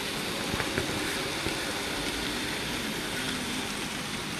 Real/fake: real